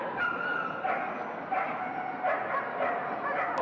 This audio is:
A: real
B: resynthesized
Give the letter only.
A